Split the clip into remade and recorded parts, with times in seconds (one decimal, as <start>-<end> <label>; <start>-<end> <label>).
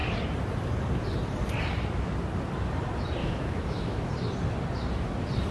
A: 0.0-3.2 recorded; 3.2-4.1 remade; 4.1-5.5 recorded